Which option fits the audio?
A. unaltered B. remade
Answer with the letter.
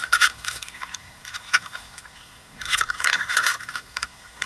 B